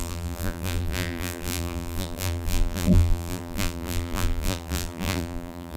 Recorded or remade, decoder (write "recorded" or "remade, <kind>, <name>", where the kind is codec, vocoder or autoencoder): remade, vocoder, BigVGAN v2